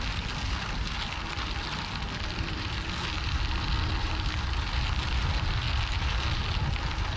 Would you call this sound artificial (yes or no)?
no